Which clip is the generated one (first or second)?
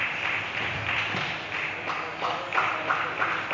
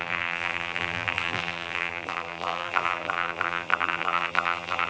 second